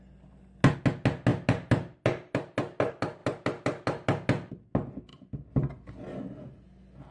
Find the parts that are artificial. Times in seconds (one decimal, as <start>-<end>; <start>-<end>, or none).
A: none